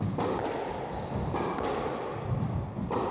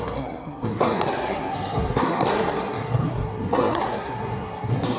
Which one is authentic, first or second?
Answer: first